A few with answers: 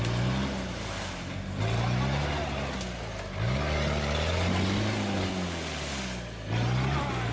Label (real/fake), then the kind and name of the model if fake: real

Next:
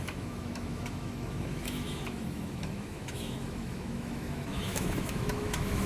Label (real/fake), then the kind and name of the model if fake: fake, autoencoder, DAC-VAE